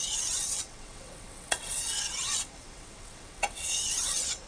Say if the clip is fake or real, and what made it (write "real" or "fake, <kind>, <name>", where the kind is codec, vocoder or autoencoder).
fake, vocoder, WaveNeXt